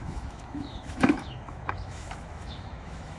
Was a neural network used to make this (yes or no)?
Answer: yes